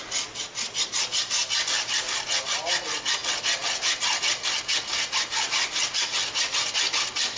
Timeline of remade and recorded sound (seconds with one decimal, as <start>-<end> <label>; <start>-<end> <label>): 0.0-7.4 recorded